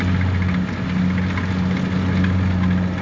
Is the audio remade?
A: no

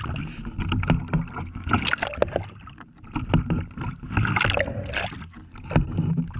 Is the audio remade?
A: no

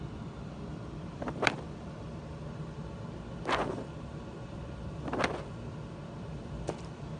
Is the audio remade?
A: yes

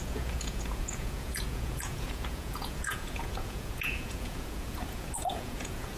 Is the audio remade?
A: yes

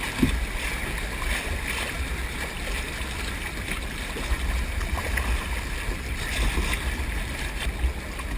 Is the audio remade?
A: no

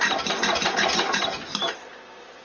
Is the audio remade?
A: no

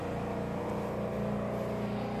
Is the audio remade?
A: no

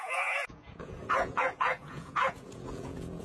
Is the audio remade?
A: yes